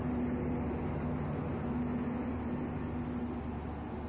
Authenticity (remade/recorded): recorded